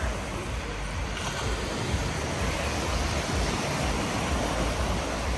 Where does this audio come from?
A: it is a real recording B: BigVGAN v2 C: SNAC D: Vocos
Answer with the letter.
B